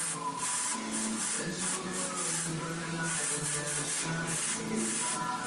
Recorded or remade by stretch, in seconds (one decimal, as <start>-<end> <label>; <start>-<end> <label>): 0.0-2.5 recorded; 2.5-3.2 remade; 3.2-5.5 recorded